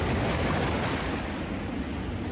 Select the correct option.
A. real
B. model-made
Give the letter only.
A